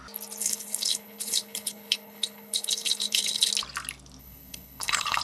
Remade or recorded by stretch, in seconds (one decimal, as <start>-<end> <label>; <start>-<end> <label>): 0.0-0.4 recorded; 0.4-3.5 remade; 3.5-4.2 recorded; 4.2-5.2 remade